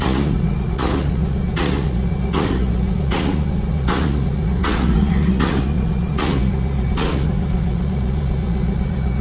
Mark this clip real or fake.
fake